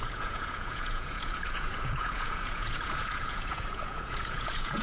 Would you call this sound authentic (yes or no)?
no